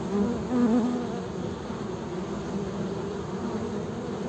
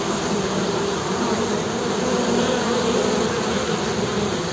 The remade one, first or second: second